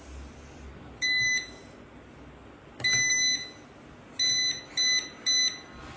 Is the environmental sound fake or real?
real